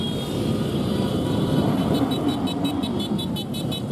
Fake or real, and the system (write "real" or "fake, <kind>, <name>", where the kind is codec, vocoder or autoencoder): fake, vocoder, BigVGAN v2